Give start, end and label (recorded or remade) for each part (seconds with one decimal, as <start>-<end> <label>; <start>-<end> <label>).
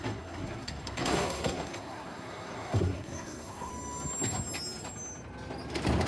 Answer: 0.0-3.7 remade; 3.7-6.1 recorded